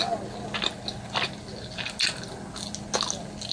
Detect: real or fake real